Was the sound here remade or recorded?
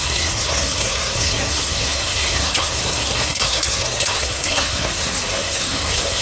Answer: remade